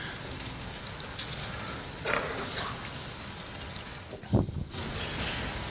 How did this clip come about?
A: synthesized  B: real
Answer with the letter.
B